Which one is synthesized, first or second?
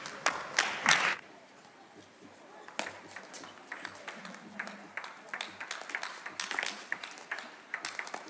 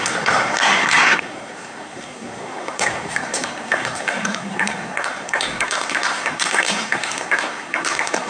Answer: second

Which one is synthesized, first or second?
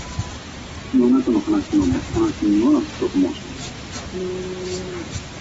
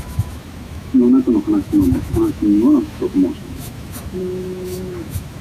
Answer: second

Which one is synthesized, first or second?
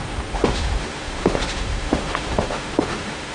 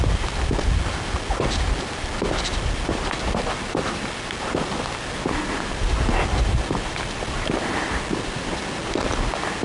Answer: first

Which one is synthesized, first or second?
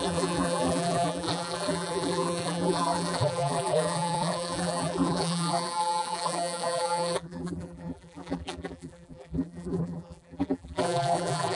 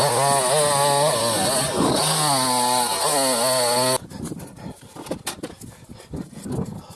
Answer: first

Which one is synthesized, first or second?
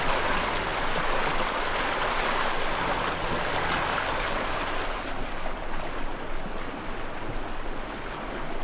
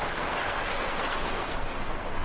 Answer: second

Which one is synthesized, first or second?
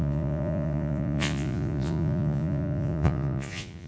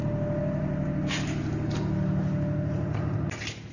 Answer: first